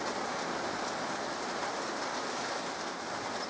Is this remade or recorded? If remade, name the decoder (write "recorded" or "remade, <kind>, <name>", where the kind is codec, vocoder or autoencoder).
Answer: recorded